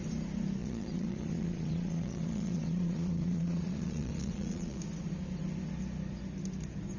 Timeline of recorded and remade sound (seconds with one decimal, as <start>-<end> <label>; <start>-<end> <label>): 0.0-0.6 recorded; 0.6-4.8 remade; 4.8-7.0 recorded